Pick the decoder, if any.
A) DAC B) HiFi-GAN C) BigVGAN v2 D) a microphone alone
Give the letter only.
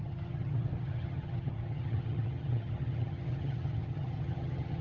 B